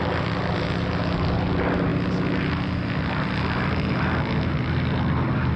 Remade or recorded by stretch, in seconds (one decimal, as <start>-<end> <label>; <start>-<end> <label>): 0.0-5.6 recorded